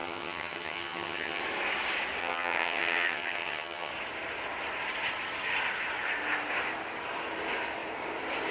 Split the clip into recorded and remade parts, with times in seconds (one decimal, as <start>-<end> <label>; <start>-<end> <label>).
0.0-1.4 remade; 1.4-2.2 recorded; 2.2-3.9 remade; 3.9-8.5 recorded